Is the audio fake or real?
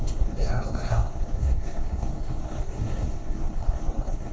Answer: fake